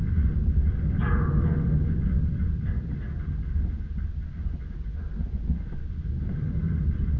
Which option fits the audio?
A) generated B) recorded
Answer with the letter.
B